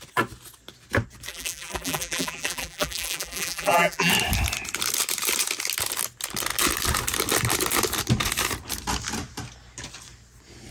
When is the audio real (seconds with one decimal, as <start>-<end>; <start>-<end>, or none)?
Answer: 0.0-1.3; 4.1-10.7